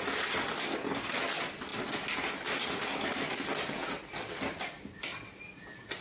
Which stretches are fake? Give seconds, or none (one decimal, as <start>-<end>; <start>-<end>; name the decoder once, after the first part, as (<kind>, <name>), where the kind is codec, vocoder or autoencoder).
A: none